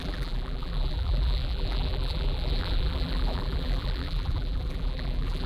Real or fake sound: fake